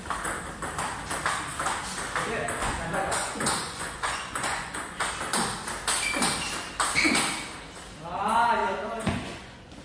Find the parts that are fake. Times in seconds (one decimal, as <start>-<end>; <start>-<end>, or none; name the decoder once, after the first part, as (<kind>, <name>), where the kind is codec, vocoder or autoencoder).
2.6-5.1 (vocoder, Vocos); 8.6-9.8